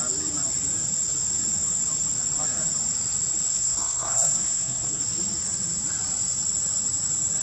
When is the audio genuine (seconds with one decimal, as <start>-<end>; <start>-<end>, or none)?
0.0-3.5; 5.0-7.4